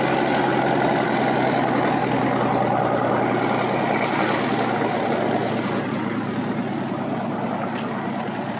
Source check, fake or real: real